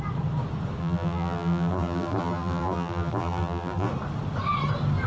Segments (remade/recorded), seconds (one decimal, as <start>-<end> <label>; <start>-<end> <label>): 0.0-0.8 recorded; 0.8-3.9 remade; 3.9-5.1 recorded